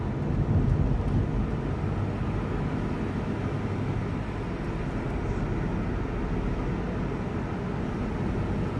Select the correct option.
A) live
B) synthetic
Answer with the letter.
A